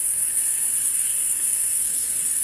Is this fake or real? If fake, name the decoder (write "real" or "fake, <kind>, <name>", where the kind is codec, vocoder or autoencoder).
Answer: fake, codec, SNAC